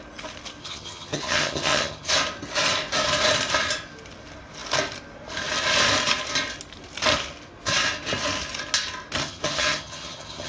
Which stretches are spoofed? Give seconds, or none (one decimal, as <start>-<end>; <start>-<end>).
0.6-2.1; 9.2-10.5